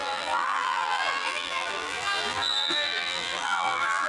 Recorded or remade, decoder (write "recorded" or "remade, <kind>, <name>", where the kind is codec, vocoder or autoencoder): remade, vocoder, BigVGAN v2